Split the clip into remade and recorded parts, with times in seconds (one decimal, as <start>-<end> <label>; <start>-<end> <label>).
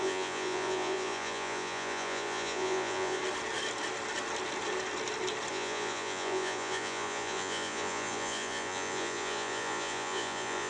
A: 0.0-3.2 remade; 3.2-5.5 recorded; 5.5-10.7 remade